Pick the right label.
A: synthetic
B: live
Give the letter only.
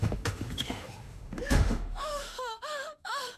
A